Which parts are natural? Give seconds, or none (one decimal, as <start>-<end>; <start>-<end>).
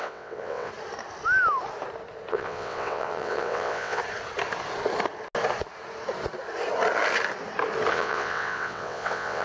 0.7-2.3; 4.0-7.9